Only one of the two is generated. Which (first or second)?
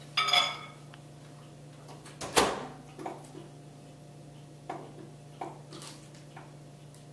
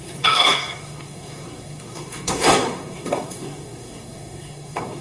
second